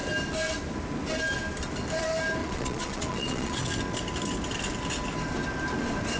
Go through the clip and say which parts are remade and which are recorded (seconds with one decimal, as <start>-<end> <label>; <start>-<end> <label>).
0.0-2.4 recorded; 2.4-3.7 remade; 3.7-6.2 recorded